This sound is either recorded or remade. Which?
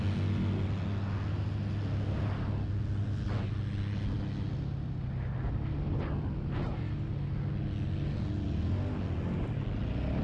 recorded